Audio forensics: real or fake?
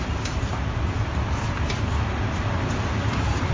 real